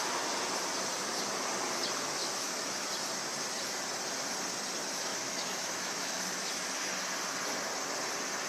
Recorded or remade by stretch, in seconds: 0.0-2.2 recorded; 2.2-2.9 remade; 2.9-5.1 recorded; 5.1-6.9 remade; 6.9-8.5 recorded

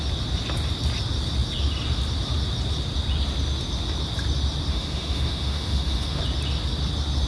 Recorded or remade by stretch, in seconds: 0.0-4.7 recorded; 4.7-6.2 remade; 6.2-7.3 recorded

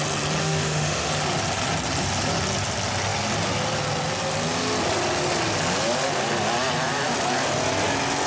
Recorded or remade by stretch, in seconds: 0.0-0.4 recorded; 0.4-1.1 remade; 1.1-8.3 recorded